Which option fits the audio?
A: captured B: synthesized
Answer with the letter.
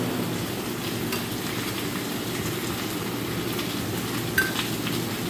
A